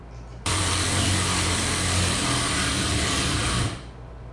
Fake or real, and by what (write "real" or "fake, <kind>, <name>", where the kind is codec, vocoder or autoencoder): fake, vocoder, BigVGAN v2